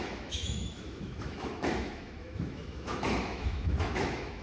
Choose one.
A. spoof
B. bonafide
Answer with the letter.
A